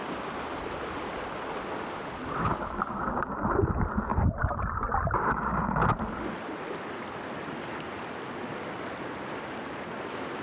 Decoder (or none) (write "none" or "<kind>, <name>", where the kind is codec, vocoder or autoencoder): none